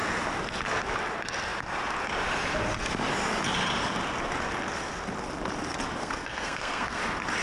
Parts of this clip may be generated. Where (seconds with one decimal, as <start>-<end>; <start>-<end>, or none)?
6.0-7.0